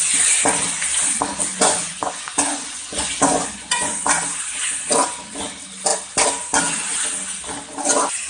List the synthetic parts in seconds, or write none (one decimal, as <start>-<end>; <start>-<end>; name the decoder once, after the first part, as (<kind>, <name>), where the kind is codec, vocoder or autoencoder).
1.5-4.0 (vocoder, Vocos)